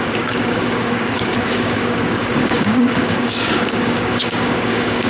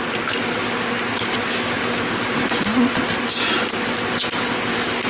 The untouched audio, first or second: second